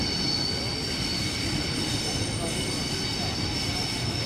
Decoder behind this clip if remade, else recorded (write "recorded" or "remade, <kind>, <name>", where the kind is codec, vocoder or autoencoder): recorded